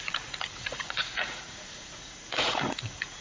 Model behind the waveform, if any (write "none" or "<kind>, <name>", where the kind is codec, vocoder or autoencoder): vocoder, Vocos